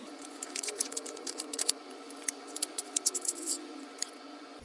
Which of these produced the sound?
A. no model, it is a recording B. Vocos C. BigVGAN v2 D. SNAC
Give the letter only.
B